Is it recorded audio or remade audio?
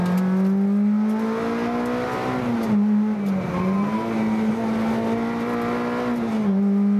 recorded